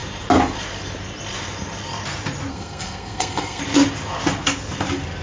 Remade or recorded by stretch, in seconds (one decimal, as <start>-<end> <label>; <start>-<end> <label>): 0.0-2.5 recorded; 2.5-3.6 remade; 3.6-5.2 recorded